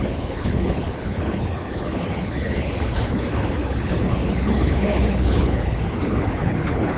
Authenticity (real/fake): fake